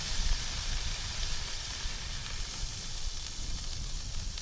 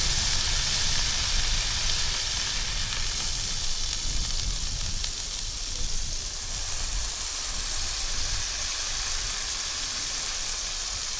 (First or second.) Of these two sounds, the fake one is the first